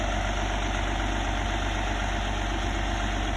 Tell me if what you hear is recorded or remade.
recorded